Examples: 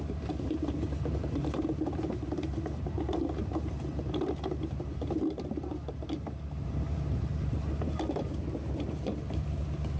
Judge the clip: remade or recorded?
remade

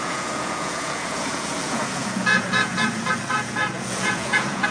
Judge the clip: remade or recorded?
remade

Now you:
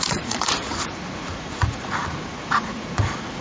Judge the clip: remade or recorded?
remade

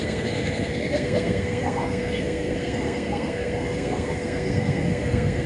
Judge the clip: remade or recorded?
remade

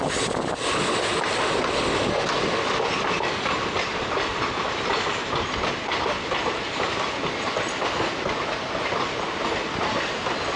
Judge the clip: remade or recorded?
recorded